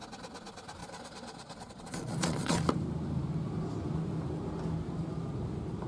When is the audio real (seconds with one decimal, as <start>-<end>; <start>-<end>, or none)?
0.0-0.8; 2.6-5.9